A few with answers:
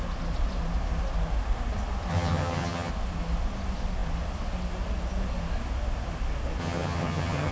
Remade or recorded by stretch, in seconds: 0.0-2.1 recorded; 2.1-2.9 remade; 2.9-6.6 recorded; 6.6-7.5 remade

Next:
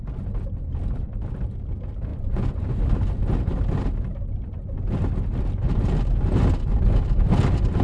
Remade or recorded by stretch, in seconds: 0.0-2.1 recorded; 2.1-2.8 remade; 2.8-7.8 recorded

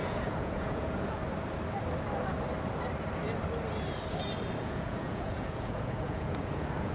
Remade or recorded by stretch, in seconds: 0.0-1.2 remade; 1.2-4.6 recorded; 4.6-6.9 remade